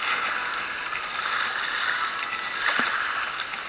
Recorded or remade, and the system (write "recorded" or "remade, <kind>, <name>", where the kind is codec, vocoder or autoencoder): recorded